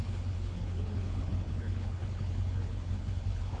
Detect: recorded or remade remade